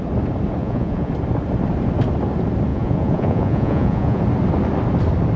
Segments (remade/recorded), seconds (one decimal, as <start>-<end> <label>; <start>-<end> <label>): 0.0-0.6 recorded; 0.6-1.1 remade; 1.1-2.7 recorded; 2.7-4.2 remade; 4.2-5.4 recorded